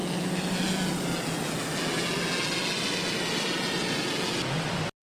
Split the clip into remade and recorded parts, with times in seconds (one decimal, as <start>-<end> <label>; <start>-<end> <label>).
0.0-5.0 recorded